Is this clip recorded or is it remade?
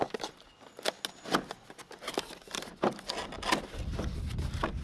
recorded